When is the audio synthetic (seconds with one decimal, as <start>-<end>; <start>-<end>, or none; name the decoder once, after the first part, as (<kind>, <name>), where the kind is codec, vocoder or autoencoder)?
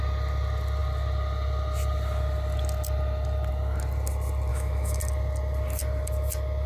4.5-5.0 (autoencoder, DAC-VAE)